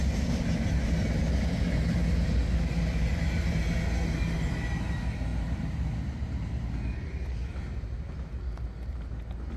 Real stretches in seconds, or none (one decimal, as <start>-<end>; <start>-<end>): 0.0-5.3; 6.7-9.6